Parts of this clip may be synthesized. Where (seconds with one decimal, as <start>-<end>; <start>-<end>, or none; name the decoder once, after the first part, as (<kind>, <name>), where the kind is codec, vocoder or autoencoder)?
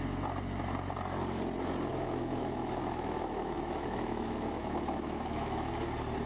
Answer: 1.9-5.7 (autoencoder, DAC-VAE)